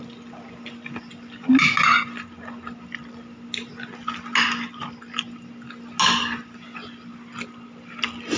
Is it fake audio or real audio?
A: real